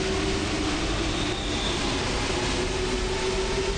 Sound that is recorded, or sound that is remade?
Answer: recorded